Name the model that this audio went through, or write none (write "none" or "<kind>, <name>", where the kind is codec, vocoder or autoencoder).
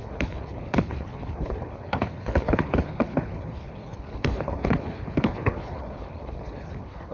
codec, HILCodec